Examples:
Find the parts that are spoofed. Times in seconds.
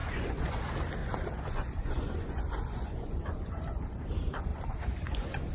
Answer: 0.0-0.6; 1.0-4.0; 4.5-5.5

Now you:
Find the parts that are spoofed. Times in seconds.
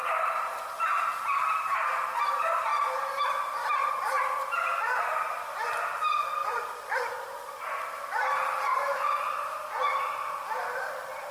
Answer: none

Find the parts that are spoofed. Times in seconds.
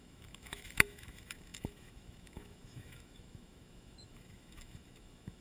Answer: 0.0-5.4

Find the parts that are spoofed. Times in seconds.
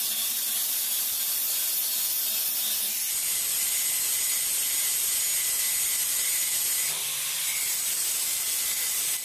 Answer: 0.0-1.4; 3.0-3.5; 7.0-9.2